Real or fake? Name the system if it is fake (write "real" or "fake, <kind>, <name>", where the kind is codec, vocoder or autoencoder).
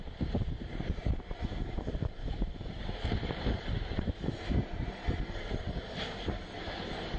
fake, vocoder, BigVGAN v2